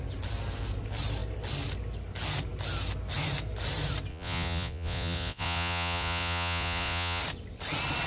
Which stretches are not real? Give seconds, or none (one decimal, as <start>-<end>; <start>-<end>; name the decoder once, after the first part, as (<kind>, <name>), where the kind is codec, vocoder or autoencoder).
4.1-7.2 (vocoder, Vocos)